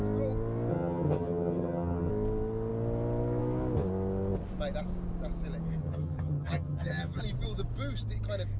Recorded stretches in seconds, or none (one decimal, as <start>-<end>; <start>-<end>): 0.0-0.7; 2.1-5.8; 7.2-8.6